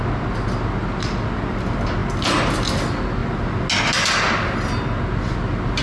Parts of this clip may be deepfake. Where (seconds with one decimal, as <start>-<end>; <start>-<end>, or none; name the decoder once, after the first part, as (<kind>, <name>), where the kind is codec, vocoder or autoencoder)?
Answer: none